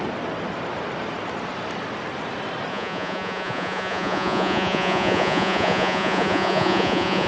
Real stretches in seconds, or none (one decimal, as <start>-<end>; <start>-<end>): 0.0-2.7